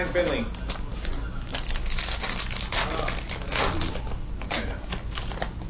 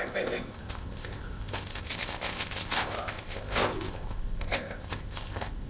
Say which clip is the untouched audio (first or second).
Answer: first